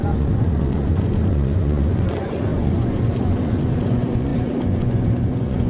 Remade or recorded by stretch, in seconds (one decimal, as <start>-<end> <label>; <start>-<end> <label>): 0.0-5.7 remade